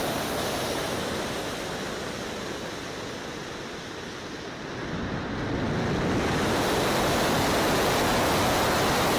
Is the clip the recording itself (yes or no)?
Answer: yes